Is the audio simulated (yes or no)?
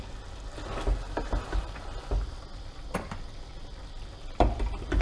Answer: no